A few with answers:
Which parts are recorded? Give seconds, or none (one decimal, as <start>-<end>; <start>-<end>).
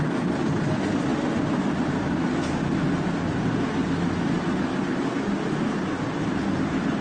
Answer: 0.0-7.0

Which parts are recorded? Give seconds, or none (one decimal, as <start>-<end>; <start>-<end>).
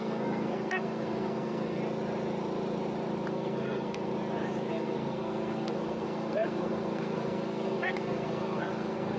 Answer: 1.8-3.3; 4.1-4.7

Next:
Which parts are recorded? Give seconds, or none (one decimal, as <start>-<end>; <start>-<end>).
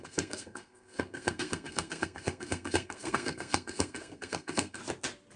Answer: 4.8-5.4